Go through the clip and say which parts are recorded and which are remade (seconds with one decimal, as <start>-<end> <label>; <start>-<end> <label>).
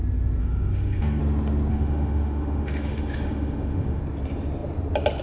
0.0-0.4 recorded; 0.4-1.2 remade; 1.2-1.7 recorded; 1.7-4.0 remade; 4.0-5.2 recorded